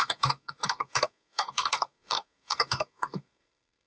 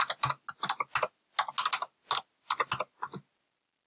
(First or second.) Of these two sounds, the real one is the second